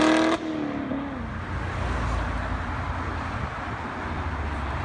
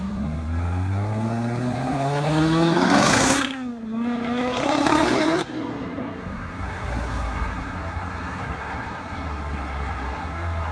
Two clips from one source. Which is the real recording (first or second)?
first